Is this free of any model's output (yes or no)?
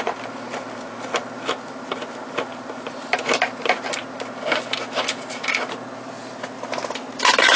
yes